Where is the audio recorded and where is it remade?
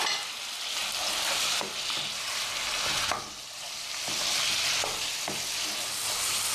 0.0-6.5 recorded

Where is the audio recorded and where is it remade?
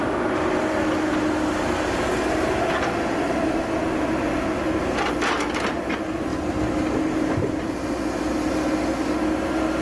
0.0-9.8 recorded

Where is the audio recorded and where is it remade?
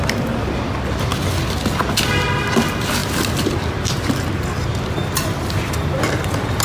0.0-6.6 recorded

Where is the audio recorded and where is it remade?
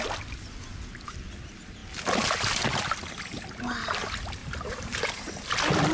0.0-4.4 recorded; 4.4-5.5 remade; 5.5-5.9 recorded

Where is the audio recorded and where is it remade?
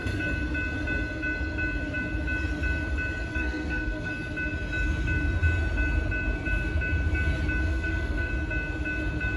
0.0-3.3 recorded; 3.3-4.1 remade; 4.1-7.6 recorded; 7.6-8.3 remade; 8.3-9.4 recorded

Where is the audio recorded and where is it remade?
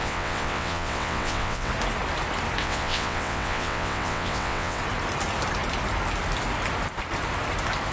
0.0-1.7 remade; 1.7-2.6 recorded; 2.6-4.8 remade; 4.8-7.9 recorded